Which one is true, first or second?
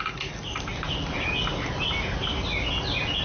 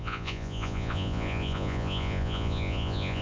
first